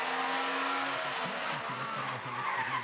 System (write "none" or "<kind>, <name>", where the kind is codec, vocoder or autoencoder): none